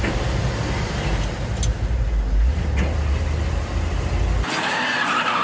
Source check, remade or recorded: recorded